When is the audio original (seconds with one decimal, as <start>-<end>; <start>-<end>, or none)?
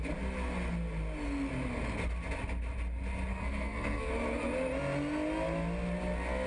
0.0-3.3; 4.1-6.5